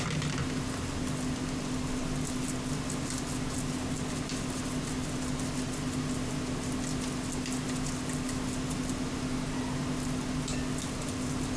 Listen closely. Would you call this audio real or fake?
real